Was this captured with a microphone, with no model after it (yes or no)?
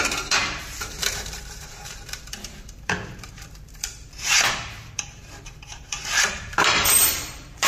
no